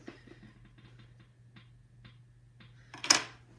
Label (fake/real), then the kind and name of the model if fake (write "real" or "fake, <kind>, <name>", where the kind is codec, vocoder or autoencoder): real